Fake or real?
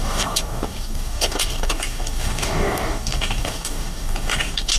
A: fake